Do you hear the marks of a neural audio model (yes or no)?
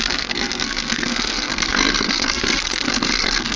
yes